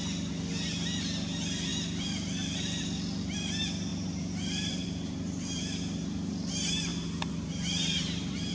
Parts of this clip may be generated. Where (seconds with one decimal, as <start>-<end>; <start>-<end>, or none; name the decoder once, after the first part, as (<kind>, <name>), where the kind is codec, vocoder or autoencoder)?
3.9-6.5 (vocoder, BigVGAN v2); 6.9-8.5